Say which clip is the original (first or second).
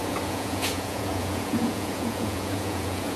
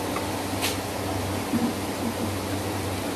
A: second